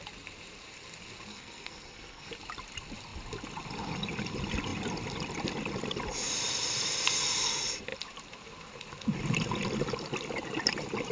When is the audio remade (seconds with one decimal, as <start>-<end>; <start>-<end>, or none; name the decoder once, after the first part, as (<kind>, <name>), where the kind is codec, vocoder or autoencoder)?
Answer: 1.3-2.3 (codec, SNAC)